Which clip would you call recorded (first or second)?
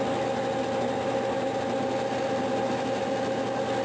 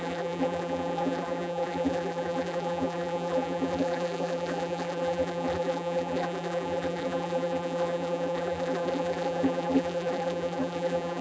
first